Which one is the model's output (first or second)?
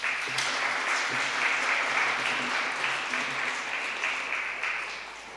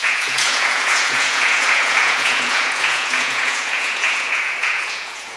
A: second